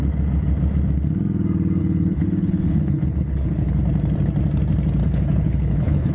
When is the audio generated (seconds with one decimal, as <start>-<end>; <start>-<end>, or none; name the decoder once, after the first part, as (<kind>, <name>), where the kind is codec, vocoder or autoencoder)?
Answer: 1.8-3.8 (codec, HILCodec); 5.0-6.1